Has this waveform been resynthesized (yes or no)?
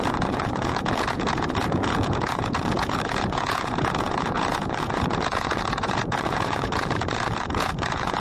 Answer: yes